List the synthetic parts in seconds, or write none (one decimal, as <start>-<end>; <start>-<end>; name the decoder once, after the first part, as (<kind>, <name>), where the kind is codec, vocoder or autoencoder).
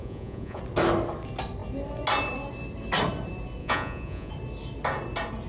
0.0-0.6 (vocoder, Vocos); 3.6-4.3